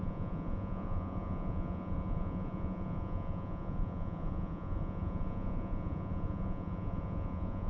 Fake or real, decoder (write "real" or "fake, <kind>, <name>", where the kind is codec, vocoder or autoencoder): fake, vocoder, Vocos